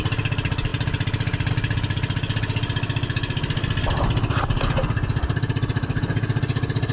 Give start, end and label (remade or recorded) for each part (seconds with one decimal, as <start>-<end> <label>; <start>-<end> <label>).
0.0-6.9 recorded